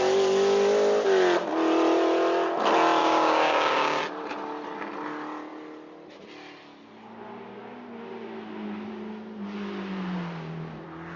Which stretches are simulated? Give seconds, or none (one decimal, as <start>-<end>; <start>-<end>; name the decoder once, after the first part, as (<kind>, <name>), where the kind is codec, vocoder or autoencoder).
3.0-4.0 (codec, DAC)